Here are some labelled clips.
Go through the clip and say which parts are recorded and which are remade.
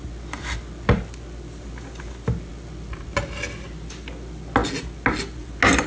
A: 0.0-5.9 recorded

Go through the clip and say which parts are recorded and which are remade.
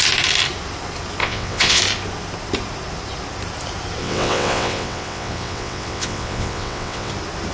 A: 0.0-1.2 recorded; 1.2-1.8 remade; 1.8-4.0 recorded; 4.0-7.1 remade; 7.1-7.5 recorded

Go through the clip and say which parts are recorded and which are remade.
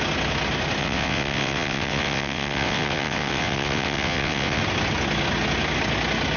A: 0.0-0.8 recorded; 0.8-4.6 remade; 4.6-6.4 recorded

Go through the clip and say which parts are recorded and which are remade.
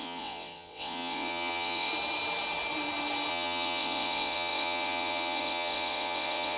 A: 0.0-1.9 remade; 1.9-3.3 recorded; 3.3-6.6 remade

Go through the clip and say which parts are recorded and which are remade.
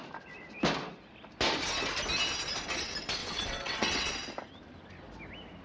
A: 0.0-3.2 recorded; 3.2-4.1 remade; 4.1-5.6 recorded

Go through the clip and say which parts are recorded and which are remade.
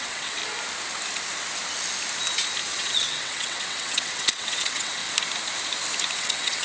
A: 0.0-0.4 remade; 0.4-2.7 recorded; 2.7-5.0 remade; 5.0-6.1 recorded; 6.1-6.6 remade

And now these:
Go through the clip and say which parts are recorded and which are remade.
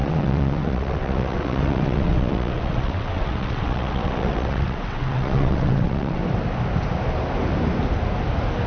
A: 0.0-6.2 remade; 6.2-8.7 recorded